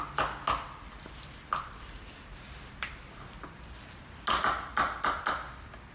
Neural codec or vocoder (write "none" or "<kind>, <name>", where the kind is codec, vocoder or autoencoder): none